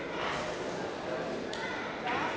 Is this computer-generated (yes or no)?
no